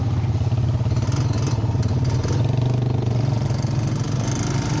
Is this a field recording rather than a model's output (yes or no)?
yes